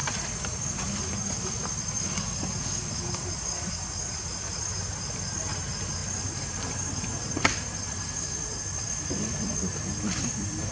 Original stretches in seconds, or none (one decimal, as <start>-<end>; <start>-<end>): 1.0-10.7